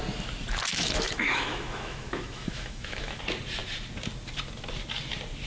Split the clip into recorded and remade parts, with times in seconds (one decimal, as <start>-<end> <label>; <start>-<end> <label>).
0.0-0.7 recorded; 0.7-3.2 remade; 3.2-5.5 recorded